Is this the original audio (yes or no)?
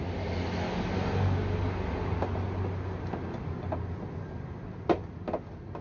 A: yes